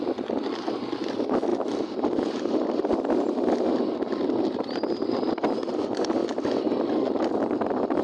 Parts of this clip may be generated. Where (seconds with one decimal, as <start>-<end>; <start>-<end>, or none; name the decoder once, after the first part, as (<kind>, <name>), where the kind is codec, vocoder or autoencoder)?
none